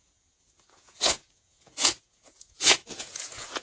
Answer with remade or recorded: remade